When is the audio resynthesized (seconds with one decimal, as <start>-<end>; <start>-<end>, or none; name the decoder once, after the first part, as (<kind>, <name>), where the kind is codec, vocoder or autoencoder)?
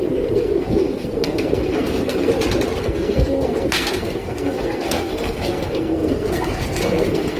0.0-2.3 (codec, SNAC); 2.8-7.4